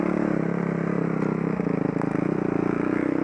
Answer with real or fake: real